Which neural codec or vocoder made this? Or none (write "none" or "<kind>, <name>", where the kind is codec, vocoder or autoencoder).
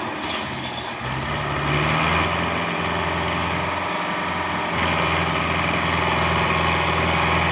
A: none